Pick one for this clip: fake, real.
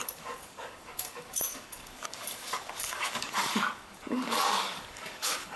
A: fake